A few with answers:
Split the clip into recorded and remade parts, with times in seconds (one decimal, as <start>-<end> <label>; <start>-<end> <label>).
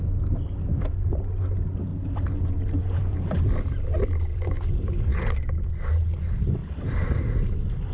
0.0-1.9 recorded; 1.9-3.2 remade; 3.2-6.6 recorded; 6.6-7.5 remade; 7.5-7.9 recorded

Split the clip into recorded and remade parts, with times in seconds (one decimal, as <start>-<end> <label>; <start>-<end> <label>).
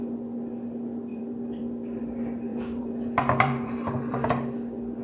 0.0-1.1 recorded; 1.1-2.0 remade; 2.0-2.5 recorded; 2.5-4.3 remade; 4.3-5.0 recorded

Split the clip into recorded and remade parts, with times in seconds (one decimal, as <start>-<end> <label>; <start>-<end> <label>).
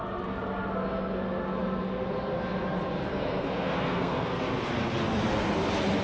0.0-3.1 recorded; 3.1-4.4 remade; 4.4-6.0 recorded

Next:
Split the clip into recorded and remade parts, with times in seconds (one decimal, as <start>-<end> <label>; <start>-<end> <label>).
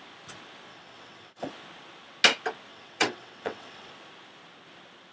0.0-0.7 recorded; 0.7-1.5 remade; 1.5-2.7 recorded; 2.7-3.9 remade; 3.9-5.1 recorded